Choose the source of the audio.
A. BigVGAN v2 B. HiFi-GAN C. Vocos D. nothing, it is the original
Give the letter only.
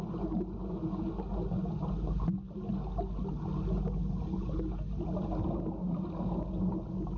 D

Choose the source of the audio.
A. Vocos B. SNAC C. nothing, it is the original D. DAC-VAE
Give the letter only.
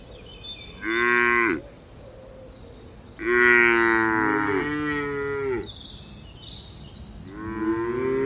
C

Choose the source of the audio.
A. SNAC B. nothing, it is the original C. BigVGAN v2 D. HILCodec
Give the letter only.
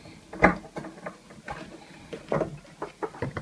B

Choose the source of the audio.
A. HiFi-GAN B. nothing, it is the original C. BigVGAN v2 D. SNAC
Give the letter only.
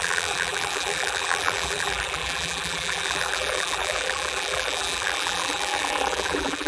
C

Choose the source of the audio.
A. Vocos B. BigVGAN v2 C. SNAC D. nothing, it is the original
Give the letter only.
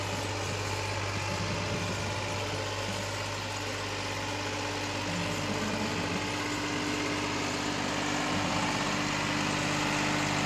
D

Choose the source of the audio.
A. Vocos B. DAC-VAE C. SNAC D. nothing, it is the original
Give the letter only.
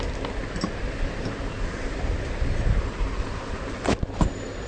D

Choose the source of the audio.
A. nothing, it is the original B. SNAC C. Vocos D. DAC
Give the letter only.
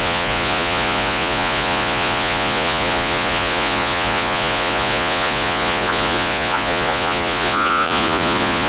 C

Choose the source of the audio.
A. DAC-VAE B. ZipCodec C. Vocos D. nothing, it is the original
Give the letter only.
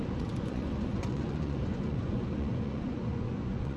C